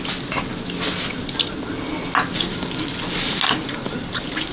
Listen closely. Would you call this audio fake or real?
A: real